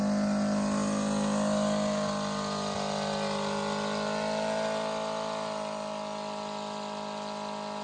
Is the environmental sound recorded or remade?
recorded